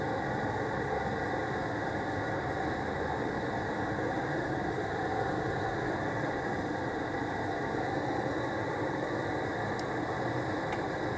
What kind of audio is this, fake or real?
real